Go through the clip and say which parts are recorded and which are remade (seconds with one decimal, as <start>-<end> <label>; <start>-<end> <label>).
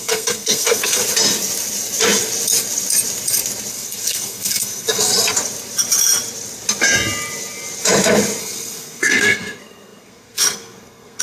0.0-1.0 remade; 1.0-3.7 recorded; 3.7-5.1 remade; 5.1-8.4 recorded; 8.4-11.2 remade